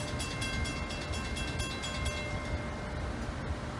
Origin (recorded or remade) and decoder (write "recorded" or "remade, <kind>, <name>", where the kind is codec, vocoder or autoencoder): recorded